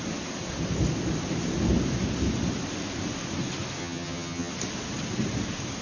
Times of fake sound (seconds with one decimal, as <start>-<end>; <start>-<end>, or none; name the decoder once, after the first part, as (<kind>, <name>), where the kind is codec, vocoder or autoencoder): 3.8-4.5 (vocoder, HiFi-GAN)